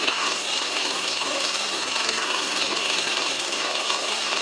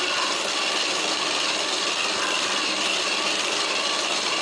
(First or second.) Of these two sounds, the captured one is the second